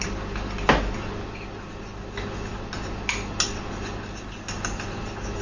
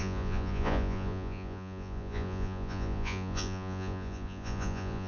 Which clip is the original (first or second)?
first